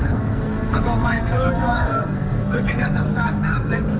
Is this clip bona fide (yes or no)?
no